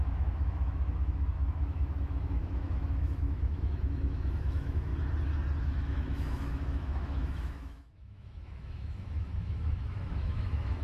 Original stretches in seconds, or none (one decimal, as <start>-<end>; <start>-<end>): 4.9-5.6